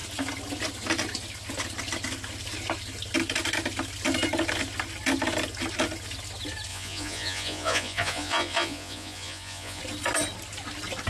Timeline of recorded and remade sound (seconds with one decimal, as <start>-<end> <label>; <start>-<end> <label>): 0.0-6.7 recorded; 6.7-9.8 remade; 9.8-11.1 recorded